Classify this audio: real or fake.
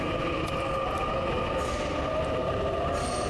real